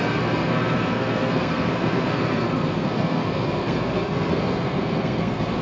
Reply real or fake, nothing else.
fake